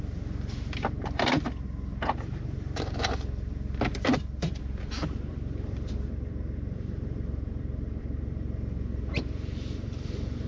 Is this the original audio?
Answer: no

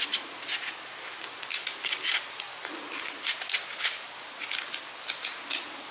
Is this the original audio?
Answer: yes